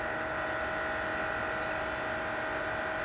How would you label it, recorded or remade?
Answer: recorded